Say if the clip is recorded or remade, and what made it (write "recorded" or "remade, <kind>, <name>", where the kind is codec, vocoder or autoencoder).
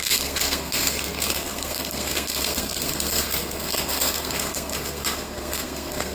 remade, codec, SNAC